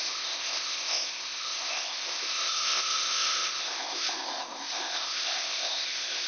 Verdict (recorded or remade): remade